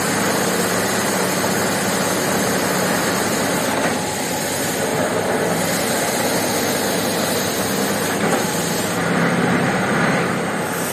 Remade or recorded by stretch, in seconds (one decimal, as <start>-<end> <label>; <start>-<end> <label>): 0.0-10.9 recorded